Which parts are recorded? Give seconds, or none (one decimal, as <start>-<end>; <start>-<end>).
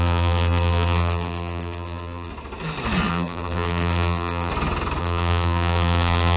2.3-3.1; 4.5-5.0